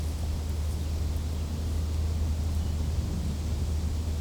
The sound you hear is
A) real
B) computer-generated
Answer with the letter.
A